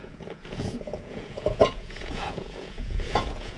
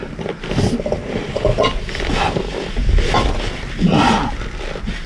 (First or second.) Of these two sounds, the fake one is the first